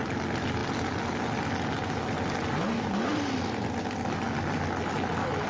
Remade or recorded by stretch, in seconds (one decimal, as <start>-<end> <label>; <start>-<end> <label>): 0.0-5.5 recorded